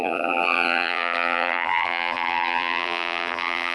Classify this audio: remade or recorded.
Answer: remade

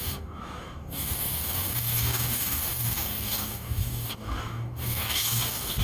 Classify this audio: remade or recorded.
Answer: remade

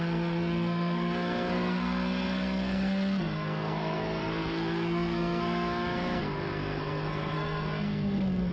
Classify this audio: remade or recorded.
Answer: remade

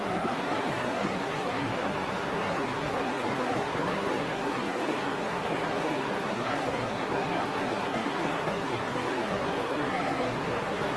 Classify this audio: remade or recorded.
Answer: remade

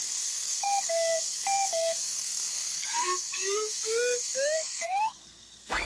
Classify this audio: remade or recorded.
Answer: remade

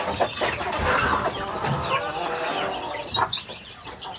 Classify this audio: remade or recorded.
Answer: recorded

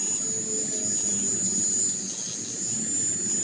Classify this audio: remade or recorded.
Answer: recorded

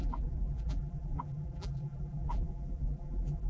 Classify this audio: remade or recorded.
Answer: remade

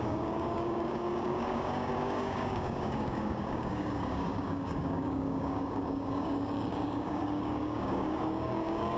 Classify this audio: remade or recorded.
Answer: remade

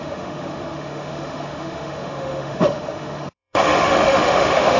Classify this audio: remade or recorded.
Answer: remade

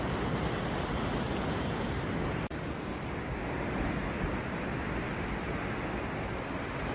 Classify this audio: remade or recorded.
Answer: recorded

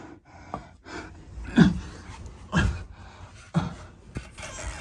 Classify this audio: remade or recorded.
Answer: recorded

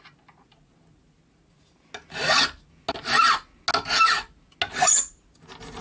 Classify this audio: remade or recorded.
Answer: recorded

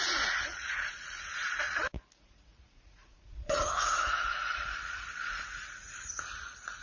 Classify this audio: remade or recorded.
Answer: remade